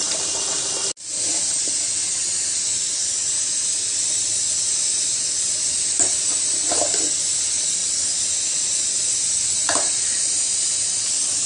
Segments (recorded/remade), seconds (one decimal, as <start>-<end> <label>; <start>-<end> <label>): 0.0-11.5 recorded